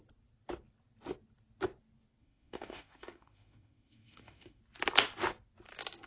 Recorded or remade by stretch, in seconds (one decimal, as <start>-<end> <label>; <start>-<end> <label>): 0.0-2.2 recorded; 2.2-4.6 remade; 4.6-6.1 recorded